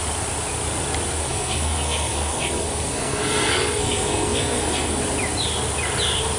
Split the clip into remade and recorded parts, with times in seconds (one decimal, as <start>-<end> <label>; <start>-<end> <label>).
0.0-1.2 recorded; 1.2-5.0 remade; 5.0-6.4 recorded